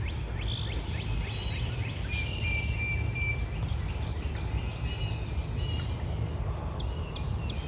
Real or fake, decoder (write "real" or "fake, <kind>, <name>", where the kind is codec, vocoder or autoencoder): real